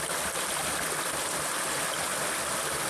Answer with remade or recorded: recorded